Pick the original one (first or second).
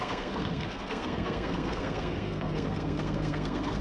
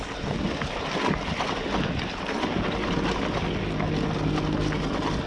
second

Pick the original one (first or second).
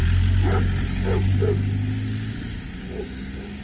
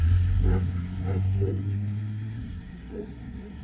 first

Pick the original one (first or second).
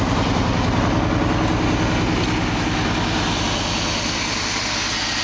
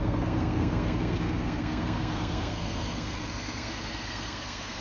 first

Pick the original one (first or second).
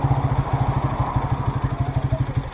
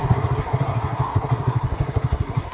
first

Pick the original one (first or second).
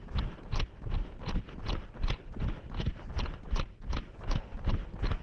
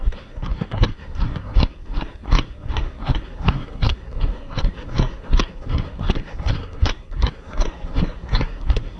first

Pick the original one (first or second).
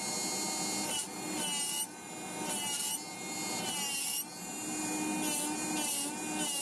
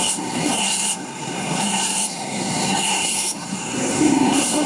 first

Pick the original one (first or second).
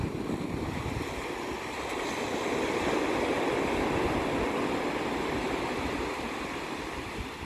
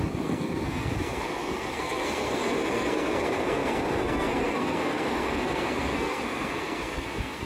first